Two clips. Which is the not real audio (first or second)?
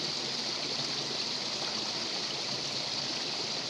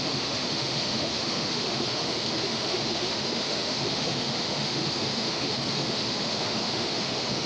second